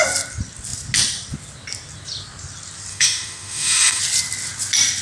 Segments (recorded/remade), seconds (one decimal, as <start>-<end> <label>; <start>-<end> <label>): 0.0-2.9 recorded; 2.9-4.0 remade; 4.0-5.0 recorded